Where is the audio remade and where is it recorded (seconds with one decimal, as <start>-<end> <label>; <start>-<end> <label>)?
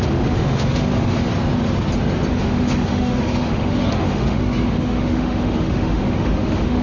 0.0-1.3 remade; 1.3-2.3 recorded; 2.3-6.8 remade